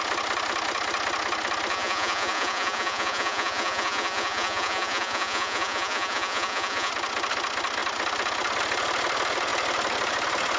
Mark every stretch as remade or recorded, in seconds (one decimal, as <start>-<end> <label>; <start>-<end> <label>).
0.0-1.7 recorded; 1.7-6.9 remade; 6.9-10.6 recorded